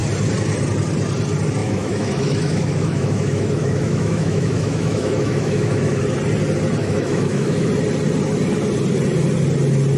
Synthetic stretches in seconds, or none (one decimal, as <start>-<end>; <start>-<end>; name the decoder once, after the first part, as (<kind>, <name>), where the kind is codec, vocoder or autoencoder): 1.6-6.0 (autoencoder, DAC-VAE); 6.8-7.7